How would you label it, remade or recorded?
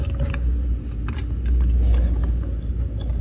recorded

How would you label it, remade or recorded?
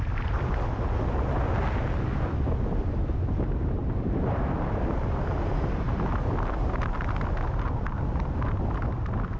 recorded